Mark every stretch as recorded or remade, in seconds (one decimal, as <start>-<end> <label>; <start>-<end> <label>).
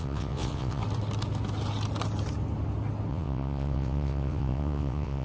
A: 0.0-0.8 remade; 0.8-3.1 recorded; 3.1-5.2 remade